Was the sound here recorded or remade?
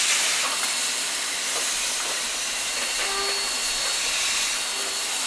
recorded